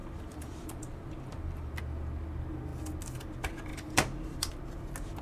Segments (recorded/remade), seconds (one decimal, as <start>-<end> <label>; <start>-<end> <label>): 0.0-1.8 remade; 1.8-3.7 recorded; 3.7-4.5 remade; 4.5-5.2 recorded